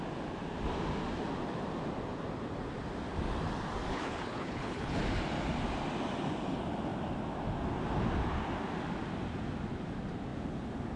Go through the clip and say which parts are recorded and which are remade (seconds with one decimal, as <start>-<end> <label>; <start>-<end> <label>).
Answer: 0.0-3.9 recorded; 3.9-5.0 remade; 5.0-11.0 recorded